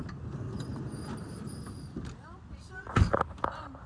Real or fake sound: real